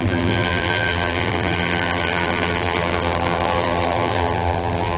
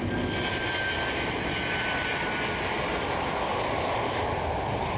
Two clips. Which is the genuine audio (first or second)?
second